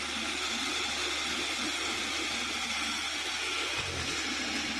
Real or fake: real